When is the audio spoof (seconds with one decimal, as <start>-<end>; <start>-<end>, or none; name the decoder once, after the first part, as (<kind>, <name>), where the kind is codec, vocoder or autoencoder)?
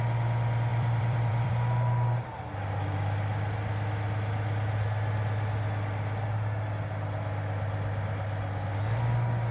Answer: 0.7-1.5 (vocoder, BigVGAN v2)